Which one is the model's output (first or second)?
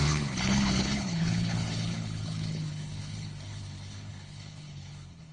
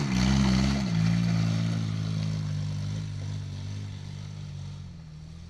first